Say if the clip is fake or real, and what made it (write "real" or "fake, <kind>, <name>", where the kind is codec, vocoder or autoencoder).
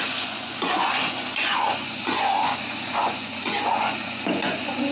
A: fake, vocoder, Vocos